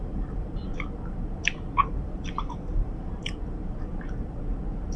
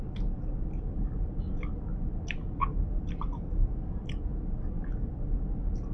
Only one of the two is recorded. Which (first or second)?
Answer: second